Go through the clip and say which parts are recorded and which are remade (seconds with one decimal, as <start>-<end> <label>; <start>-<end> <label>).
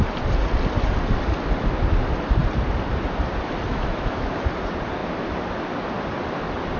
0.0-3.7 recorded; 3.7-4.4 remade; 4.4-6.8 recorded